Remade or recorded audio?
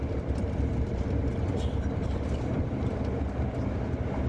recorded